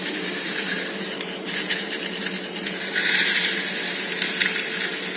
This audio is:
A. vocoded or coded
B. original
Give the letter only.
B